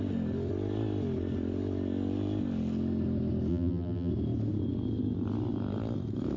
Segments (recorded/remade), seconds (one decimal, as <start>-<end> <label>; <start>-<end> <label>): 0.0-3.5 recorded; 3.5-4.1 remade; 4.1-6.4 recorded